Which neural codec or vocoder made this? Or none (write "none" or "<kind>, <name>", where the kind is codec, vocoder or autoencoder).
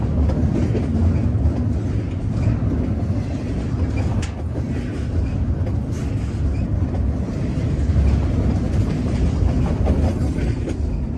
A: none